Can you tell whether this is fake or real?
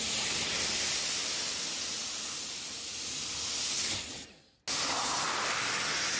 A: real